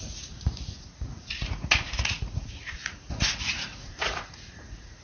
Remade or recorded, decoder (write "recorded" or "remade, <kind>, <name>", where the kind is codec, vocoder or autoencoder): remade, vocoder, Vocos